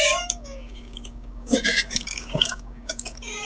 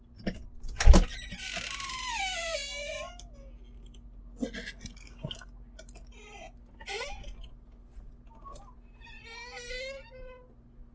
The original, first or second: second